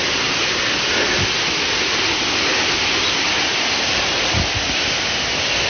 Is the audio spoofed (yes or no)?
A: no